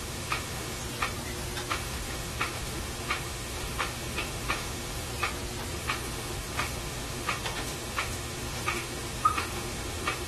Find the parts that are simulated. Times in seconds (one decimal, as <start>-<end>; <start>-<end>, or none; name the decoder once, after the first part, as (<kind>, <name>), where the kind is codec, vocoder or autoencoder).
0.0-0.8 (autoencoder, DAC-VAE); 1.7-5.1; 5.7-10.3